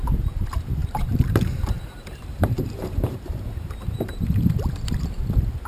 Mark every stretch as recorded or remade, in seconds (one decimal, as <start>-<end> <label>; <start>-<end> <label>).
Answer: 0.0-0.8 recorded; 0.8-4.2 remade; 4.2-5.7 recorded